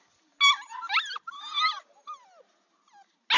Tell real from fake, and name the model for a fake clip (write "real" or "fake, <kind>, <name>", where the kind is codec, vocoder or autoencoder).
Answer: real